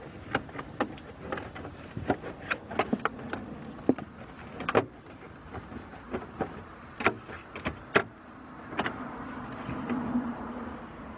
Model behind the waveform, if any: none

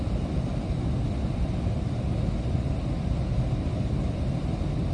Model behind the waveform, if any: none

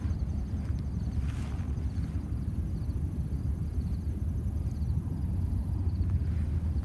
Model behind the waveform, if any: none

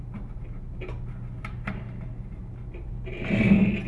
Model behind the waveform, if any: none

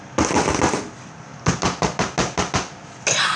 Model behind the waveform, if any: none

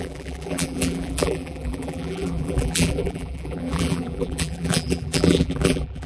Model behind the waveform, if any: vocoder, BigVGAN v2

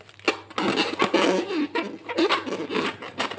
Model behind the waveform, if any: none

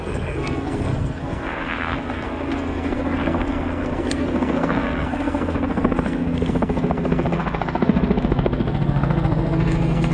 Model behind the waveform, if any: codec, SNAC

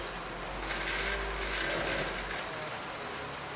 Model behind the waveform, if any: none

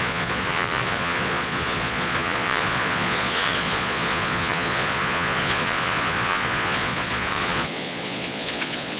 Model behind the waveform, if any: vocoder, Vocos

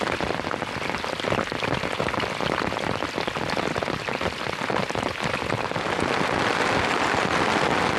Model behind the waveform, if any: none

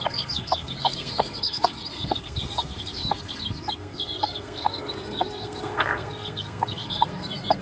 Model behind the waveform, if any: codec, SNAC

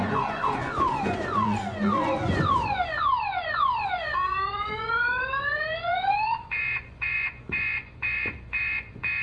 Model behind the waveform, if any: vocoder, Vocos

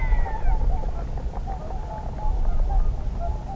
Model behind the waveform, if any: none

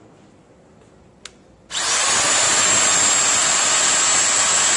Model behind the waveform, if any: none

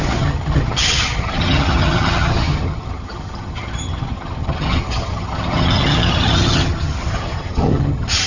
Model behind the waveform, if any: vocoder, HiFi-GAN